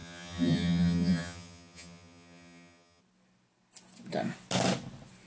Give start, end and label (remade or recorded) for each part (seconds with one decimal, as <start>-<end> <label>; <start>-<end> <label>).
0.0-3.0 remade; 3.0-5.3 recorded